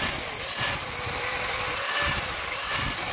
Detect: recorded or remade recorded